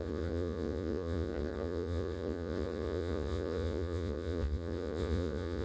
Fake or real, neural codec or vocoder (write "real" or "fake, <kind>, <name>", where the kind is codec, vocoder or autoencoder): fake, vocoder, Vocos